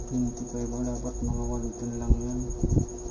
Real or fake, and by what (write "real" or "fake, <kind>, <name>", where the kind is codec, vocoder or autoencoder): real